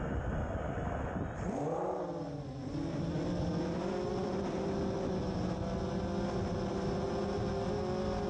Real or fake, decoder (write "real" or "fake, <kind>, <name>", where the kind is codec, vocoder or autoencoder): real